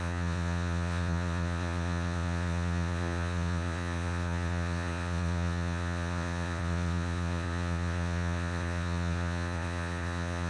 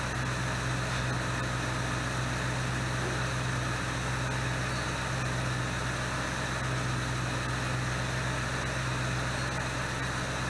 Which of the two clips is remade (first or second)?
first